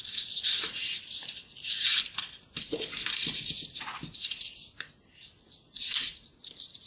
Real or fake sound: real